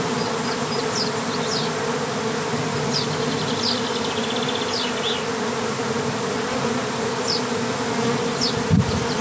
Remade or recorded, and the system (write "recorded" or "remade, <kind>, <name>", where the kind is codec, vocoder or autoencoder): recorded